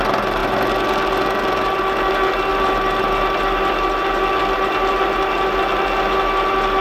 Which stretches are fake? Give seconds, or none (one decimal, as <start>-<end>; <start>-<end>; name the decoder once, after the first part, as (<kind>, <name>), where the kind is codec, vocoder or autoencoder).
none